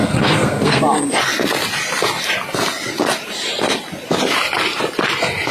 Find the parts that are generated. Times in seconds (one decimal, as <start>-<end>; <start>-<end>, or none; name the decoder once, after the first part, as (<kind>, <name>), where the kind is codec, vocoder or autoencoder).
0.0-0.8 (codec, SNAC)